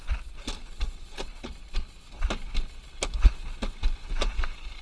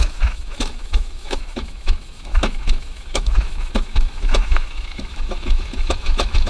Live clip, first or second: first